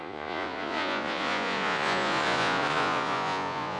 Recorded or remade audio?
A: remade